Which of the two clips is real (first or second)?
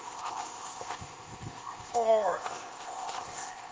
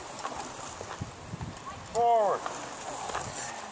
second